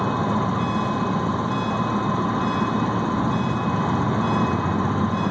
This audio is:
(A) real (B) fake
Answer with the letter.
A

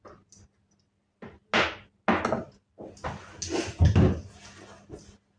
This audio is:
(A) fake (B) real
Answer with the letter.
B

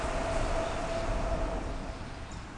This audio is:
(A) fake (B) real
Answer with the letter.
B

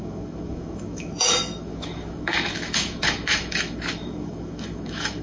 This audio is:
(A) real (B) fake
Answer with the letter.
B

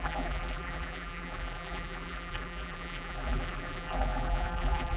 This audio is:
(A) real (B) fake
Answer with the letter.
B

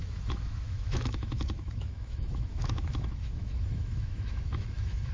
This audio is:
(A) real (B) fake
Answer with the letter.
B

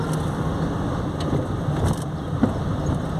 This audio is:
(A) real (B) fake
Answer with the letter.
A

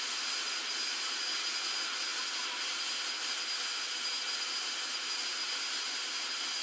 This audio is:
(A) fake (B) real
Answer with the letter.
B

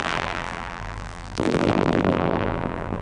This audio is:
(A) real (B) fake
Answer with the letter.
B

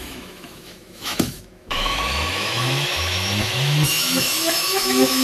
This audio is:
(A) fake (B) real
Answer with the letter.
A